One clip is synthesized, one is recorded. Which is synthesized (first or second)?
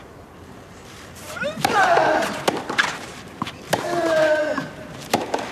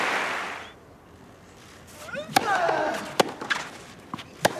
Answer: first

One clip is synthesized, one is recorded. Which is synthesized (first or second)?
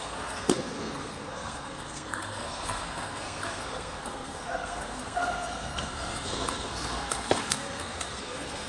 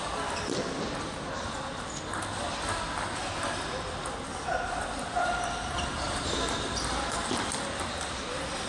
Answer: first